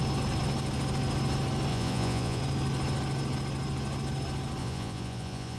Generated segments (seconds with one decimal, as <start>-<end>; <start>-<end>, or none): 1.7-2.4; 4.6-5.6